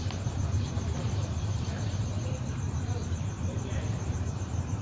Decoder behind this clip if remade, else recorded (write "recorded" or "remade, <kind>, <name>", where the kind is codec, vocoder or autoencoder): remade, vocoder, BigVGAN v2